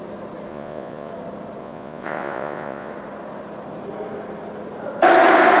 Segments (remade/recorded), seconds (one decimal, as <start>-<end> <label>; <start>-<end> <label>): 0.0-0.5 recorded; 0.5-1.1 remade; 1.1-1.6 recorded; 1.6-2.9 remade; 2.9-5.6 recorded